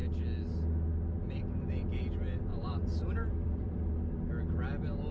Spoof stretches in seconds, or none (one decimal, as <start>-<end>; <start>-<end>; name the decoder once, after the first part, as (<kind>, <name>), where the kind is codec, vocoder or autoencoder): 2.5-3.9 (vocoder, BigVGAN v2)